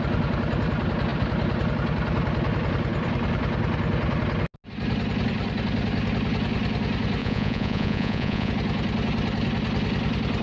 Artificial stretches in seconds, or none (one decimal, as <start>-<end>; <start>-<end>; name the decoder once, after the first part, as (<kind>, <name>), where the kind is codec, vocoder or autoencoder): 7.2-8.5 (vocoder, Vocos)